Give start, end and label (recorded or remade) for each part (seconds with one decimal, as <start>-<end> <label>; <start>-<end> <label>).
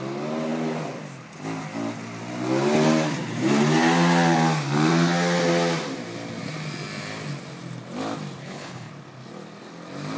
0.0-8.4 recorded; 8.4-8.9 remade; 8.9-10.2 recorded